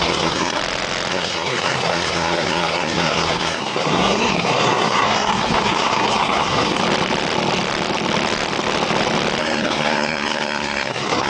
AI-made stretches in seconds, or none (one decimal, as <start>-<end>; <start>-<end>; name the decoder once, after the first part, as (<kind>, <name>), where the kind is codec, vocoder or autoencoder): 0.0-0.6 (codec, SNAC); 1.1-6.8; 9.4-11.3